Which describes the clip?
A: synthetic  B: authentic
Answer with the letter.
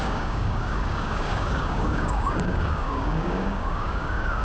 A